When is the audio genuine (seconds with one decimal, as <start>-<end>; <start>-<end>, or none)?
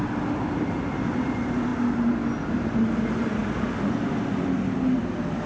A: 1.7-2.5; 3.4-4.1